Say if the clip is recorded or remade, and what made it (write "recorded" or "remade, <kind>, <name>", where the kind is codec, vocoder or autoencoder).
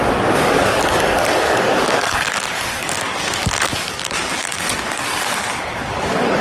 remade, codec, DAC